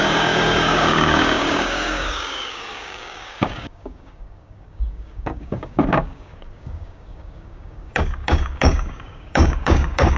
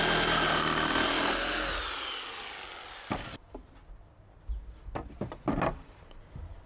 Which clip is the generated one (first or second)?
first